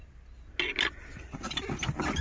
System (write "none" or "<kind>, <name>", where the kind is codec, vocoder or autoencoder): none